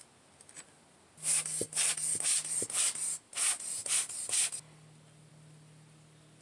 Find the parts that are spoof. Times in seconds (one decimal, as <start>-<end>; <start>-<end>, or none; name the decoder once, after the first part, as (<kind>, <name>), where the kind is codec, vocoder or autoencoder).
none